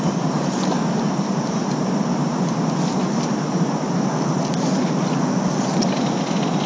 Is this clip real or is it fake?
real